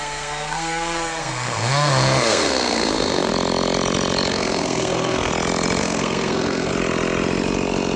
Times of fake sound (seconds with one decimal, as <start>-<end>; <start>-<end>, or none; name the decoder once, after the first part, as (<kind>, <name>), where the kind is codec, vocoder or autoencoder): 0.0-3.3 (codec, SNAC); 4.3-5.3; 5.8-6.7